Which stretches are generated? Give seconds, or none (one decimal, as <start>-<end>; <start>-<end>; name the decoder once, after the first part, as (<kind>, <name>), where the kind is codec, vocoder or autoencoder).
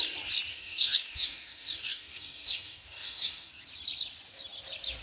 0.5-3.5 (codec, DAC)